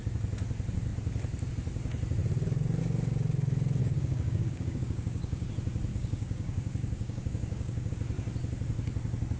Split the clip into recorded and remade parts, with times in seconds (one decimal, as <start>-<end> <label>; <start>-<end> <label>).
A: 0.0-3.8 recorded; 3.8-5.5 remade; 5.5-5.9 recorded; 5.9-7.9 remade; 7.9-9.4 recorded